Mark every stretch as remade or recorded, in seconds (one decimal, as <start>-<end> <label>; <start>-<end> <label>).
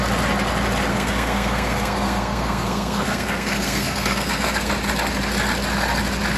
0.0-0.9 recorded; 0.9-4.7 remade; 4.7-6.4 recorded